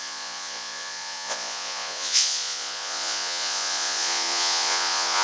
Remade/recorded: remade